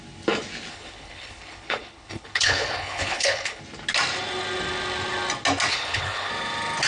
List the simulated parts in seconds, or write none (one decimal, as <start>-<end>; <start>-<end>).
0.7-3.6; 5.7-6.3